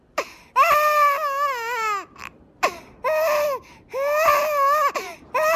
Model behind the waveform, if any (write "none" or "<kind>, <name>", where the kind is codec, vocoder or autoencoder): none